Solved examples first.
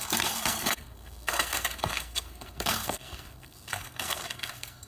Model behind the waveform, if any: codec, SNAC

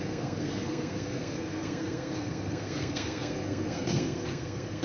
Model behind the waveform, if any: codec, SNAC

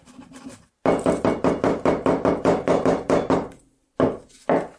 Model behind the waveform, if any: none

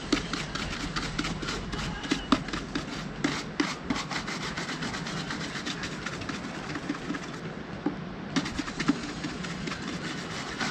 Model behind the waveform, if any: none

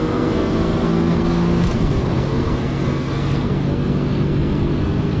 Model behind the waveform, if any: codec, SNAC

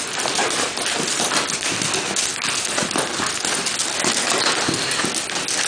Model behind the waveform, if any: none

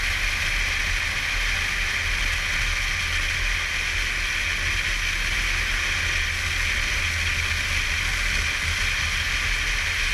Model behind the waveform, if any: none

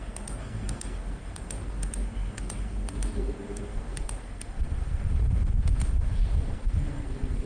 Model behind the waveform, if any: codec, SNAC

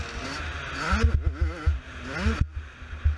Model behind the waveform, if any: none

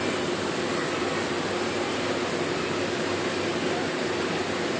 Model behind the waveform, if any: none